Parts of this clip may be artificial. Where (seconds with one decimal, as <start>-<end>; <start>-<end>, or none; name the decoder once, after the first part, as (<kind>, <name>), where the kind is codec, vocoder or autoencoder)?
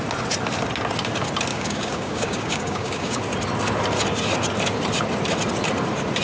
1.5-3.2 (codec, DAC)